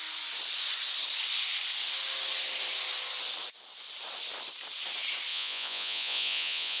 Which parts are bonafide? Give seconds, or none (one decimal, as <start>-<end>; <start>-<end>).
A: 0.0-5.3